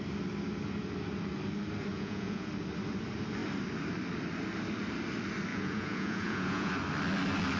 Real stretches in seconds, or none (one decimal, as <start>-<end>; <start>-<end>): 0.0-1.9; 2.5-5.5; 6.7-7.6